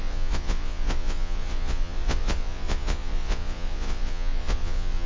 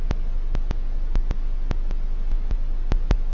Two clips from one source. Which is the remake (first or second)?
first